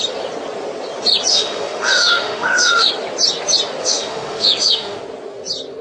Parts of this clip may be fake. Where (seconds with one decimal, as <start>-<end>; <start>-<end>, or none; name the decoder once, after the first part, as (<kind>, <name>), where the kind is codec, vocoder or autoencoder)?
1.3-2.9 (autoencoder, DAC-VAE); 3.8-5.0